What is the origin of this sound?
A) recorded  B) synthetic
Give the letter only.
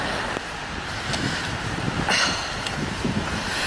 B